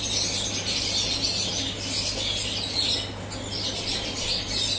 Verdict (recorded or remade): recorded